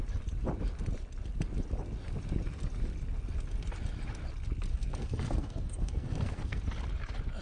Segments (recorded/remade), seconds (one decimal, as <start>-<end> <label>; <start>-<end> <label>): 0.0-4.7 recorded; 4.7-6.6 remade; 6.6-7.4 recorded

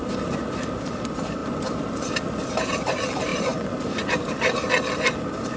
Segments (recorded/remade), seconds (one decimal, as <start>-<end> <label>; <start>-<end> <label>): 0.0-0.5 remade; 0.5-1.4 recorded; 1.4-2.1 remade; 2.1-5.6 recorded

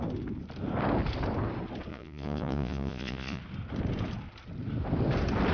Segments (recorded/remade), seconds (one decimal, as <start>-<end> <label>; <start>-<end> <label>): 0.0-1.9 recorded; 1.9-3.4 remade; 3.4-5.5 recorded

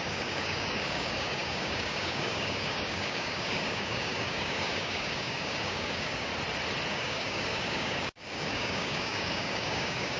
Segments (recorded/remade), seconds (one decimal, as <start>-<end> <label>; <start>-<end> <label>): 0.0-6.3 remade; 6.3-6.9 recorded; 6.9-10.2 remade

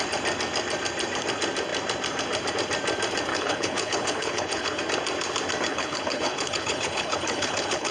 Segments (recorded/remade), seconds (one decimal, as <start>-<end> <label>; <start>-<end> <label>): 0.0-3.3 recorded; 3.3-4.8 remade; 4.8-5.7 recorded; 5.7-7.9 remade

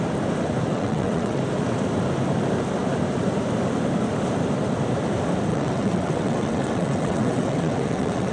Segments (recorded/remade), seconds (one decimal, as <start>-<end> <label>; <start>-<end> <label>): 0.0-0.7 recorded; 0.7-1.4 remade; 1.4-5.5 recorded; 5.5-8.3 remade

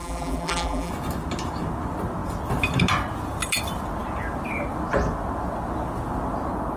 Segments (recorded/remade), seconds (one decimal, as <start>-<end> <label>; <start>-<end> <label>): 0.0-0.9 remade; 0.9-6.8 recorded